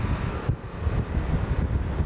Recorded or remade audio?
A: recorded